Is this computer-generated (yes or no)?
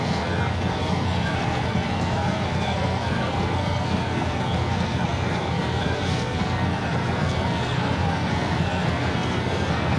yes